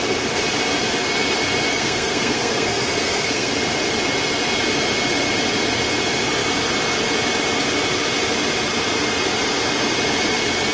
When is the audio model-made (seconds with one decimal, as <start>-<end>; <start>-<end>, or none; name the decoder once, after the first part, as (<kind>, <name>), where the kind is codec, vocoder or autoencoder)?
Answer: 1.7-3.5 (codec, SNAC)